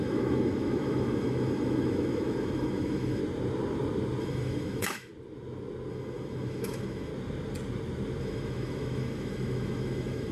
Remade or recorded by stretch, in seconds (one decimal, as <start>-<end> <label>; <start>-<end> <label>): 0.0-3.2 remade; 3.2-4.2 recorded; 4.2-5.1 remade; 5.1-5.9 recorded; 5.9-7.1 remade; 7.1-8.2 recorded; 8.2-10.3 remade